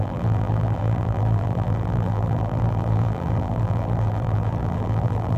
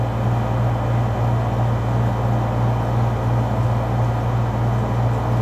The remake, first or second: first